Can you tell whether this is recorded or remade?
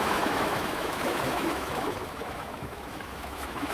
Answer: remade